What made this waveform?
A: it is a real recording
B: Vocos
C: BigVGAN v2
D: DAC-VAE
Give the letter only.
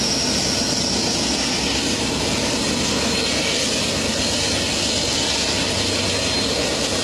A